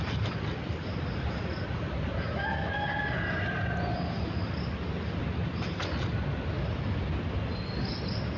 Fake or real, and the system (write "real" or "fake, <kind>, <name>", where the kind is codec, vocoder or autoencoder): real